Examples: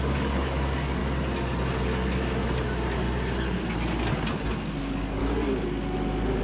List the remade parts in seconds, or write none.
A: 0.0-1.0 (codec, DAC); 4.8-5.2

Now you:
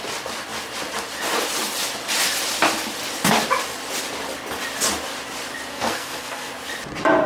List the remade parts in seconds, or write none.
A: 5.7-6.5 (codec, SNAC)